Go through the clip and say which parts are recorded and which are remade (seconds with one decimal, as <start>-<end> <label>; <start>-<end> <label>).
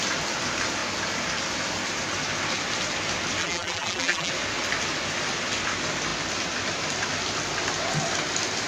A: 0.0-3.4 recorded; 3.4-4.3 remade; 4.3-8.7 recorded